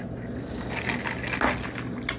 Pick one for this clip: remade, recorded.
recorded